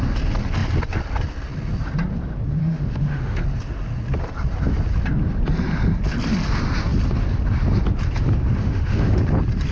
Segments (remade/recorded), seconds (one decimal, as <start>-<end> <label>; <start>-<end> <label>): 0.0-2.6 recorded; 2.6-3.4 remade; 3.4-8.6 recorded; 8.6-9.2 remade; 9.2-9.7 recorded